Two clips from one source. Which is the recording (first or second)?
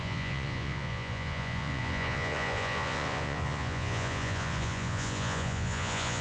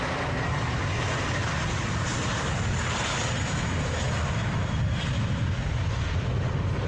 second